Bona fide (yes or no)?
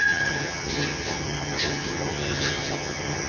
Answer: no